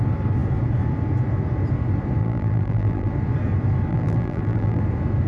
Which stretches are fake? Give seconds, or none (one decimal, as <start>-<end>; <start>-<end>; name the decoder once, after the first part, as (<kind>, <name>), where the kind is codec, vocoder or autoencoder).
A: 2.2-3.1 (vocoder, BigVGAN v2); 3.9-4.8